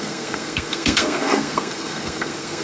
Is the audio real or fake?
fake